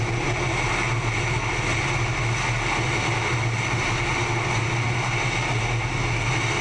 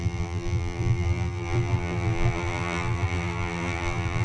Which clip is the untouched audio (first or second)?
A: first